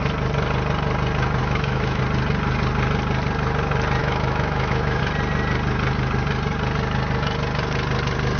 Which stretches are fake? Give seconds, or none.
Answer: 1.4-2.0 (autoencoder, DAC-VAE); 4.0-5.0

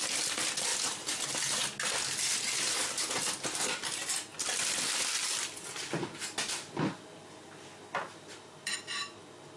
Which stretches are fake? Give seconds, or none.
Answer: none